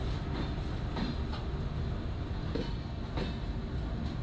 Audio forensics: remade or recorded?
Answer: recorded